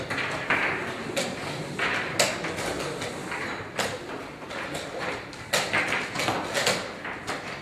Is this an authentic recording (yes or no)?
yes